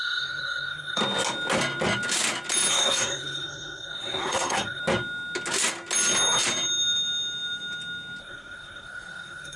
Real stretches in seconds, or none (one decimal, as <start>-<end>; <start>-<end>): 1.0-2.7; 4.8-8.2